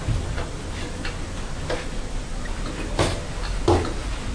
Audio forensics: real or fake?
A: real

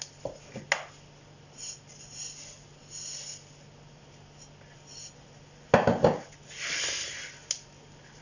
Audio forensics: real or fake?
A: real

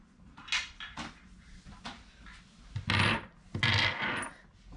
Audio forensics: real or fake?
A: real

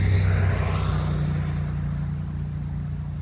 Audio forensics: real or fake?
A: real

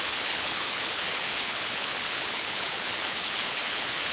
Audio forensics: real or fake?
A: fake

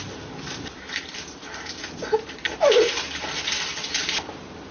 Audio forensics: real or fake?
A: fake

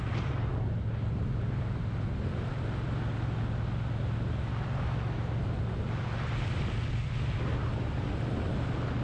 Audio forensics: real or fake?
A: real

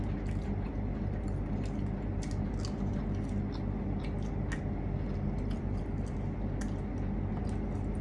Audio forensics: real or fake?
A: real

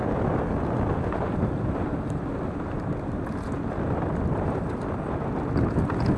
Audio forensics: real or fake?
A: real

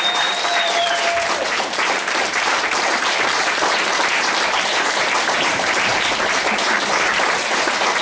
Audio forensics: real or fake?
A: fake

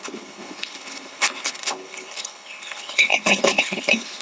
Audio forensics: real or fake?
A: fake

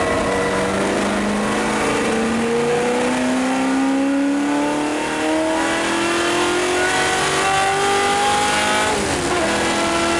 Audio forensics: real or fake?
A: real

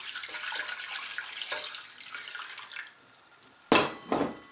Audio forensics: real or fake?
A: real